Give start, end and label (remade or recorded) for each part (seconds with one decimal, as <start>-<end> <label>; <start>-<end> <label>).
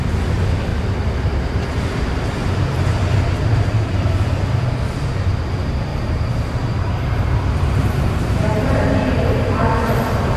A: 0.0-2.4 recorded; 2.4-3.2 remade; 3.2-5.9 recorded; 5.9-8.7 remade; 8.7-10.4 recorded